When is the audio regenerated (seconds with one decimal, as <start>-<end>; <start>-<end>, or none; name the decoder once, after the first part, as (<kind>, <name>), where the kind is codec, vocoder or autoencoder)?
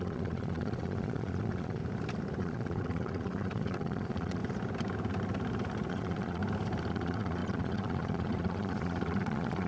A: 0.0-1.8 (vocoder, Vocos); 2.4-4.4; 5.9-6.4; 6.9-9.7